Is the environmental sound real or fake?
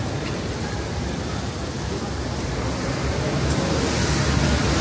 real